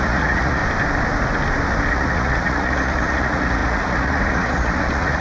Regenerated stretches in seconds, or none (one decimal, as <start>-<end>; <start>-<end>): 0.0-0.6; 1.9-5.2